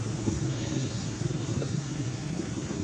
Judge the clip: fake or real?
fake